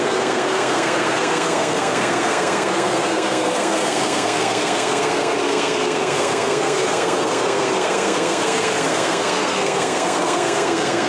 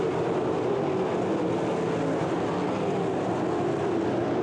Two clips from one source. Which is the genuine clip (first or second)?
second